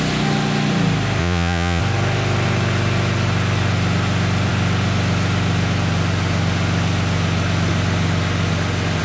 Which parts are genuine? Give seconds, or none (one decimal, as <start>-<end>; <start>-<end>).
0.0-1.2; 1.8-9.0